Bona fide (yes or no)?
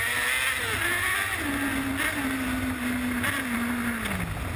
yes